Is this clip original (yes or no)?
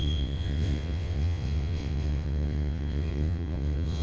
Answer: no